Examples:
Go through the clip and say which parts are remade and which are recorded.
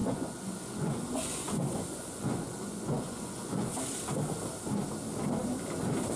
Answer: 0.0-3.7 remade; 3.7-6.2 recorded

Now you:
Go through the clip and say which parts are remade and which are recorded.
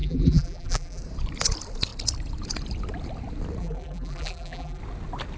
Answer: 0.0-1.0 remade; 1.0-3.6 recorded; 3.6-4.8 remade; 4.8-5.4 recorded